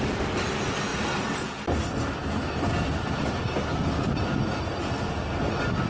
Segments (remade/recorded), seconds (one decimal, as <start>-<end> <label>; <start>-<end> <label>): 0.0-5.9 recorded